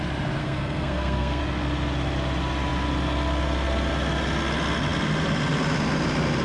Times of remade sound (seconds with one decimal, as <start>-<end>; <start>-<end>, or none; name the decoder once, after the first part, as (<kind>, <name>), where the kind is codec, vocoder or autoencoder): 0.4-1.4 (codec, SNAC)